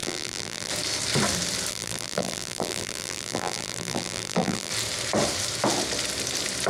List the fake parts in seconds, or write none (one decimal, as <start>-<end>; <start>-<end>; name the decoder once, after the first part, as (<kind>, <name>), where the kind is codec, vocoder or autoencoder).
0.0-0.7 (vocoder, BigVGAN v2); 1.7-4.7